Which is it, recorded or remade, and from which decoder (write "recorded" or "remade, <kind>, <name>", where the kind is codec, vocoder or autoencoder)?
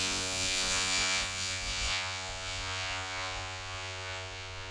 remade, vocoder, Vocos